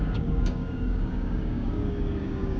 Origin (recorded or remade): remade